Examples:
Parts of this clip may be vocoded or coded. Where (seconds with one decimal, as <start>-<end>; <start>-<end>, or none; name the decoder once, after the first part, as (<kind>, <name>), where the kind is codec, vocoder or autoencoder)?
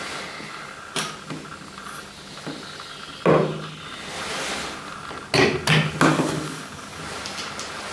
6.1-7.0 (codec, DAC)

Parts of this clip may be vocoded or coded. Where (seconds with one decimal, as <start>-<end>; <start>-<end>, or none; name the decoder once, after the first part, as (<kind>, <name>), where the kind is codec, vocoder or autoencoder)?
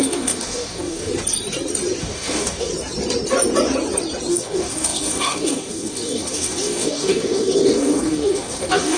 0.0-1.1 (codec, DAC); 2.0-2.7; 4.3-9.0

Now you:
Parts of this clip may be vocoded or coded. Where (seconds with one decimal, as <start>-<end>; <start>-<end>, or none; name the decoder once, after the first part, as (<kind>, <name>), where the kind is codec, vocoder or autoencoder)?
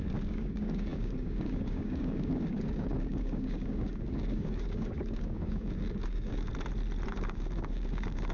0.0-6.5 (codec, DAC); 7.1-8.3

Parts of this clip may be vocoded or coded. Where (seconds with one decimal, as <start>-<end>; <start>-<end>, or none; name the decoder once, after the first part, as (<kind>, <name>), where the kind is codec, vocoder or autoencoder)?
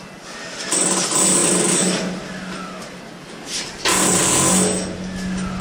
none